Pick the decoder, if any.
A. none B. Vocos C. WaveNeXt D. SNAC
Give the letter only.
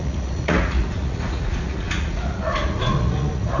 B